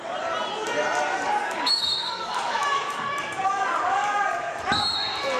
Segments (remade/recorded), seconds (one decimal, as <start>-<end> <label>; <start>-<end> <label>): 0.0-1.4 recorded; 1.4-4.6 remade; 4.6-5.4 recorded